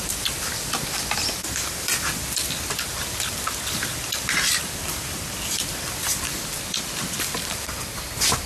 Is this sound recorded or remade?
remade